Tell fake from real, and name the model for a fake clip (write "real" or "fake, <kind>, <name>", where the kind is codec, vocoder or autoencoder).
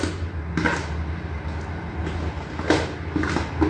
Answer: real